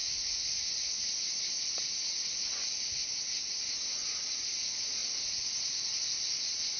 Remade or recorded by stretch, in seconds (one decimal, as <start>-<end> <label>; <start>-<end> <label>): 0.0-6.8 recorded